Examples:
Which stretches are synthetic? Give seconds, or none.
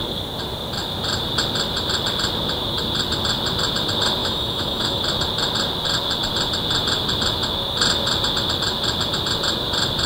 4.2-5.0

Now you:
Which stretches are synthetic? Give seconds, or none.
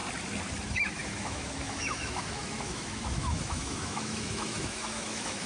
0.6-5.5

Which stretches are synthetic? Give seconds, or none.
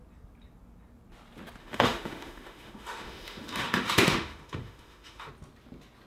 1.6-5.3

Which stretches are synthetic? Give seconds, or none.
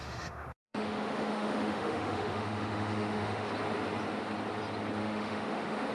0.0-3.5; 5.0-5.9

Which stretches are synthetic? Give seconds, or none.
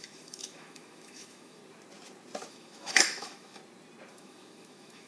0.0-1.6; 2.5-3.6; 4.1-5.1